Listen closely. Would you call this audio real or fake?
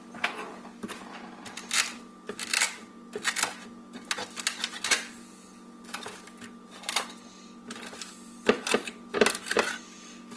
real